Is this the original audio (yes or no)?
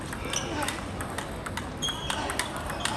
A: yes